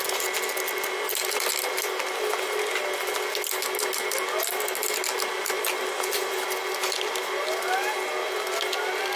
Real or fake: real